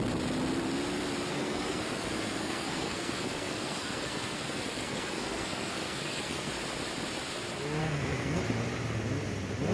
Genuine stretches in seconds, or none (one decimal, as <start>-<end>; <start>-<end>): 0.0-1.3; 6.5-7.8; 8.4-9.7